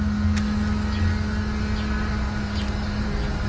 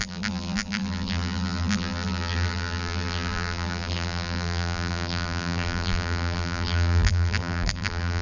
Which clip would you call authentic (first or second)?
first